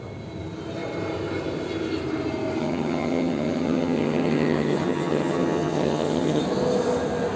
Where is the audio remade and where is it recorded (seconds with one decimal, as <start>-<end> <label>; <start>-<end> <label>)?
0.0-2.6 recorded; 2.6-6.4 remade; 6.4-7.4 recorded